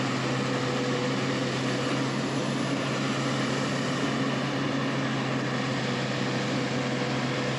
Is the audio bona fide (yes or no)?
yes